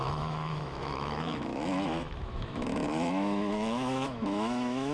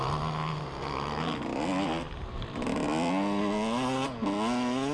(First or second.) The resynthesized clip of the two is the first